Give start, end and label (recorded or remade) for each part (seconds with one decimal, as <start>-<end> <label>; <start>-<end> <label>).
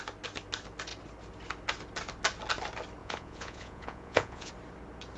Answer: 0.0-3.0 recorded; 3.0-4.5 remade; 4.5-5.2 recorded